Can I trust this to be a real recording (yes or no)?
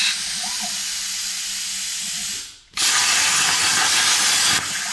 yes